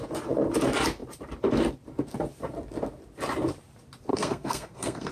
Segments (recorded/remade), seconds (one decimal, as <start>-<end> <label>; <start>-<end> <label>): 0.0-4.1 recorded; 4.1-5.1 remade